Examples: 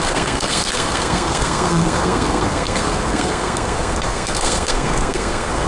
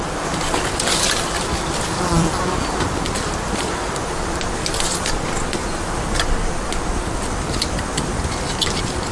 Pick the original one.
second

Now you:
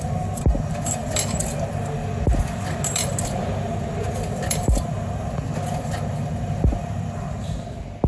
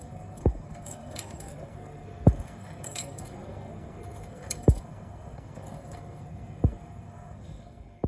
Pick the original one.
first